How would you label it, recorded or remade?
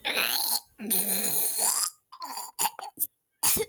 recorded